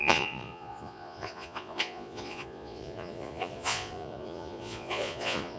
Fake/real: fake